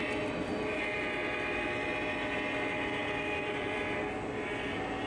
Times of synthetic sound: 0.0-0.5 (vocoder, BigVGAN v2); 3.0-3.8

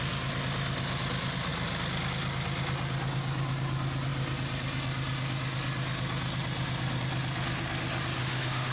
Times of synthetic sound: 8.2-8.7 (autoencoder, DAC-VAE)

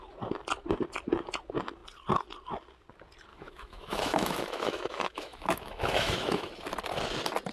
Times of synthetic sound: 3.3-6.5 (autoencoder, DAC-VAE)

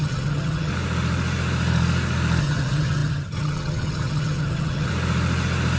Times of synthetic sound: 0.0-0.7 (vocoder, HiFi-GAN); 2.4-4.9

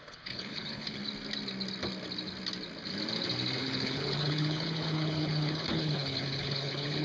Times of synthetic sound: 0.0-1.0 (codec, HILCodec); 3.6-7.0

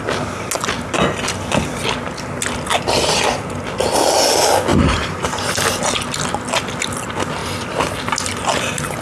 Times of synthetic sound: 4.7-5.4 (vocoder, BigVGAN v2)